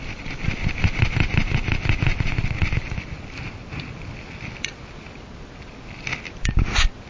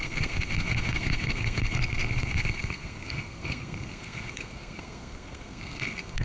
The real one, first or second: first